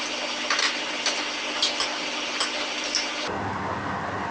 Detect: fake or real real